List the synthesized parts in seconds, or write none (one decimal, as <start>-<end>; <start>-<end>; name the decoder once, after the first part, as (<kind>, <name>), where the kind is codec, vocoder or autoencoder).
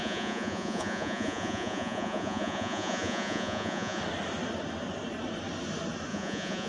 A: 0.0-4.0 (vocoder, Vocos); 6.1-6.7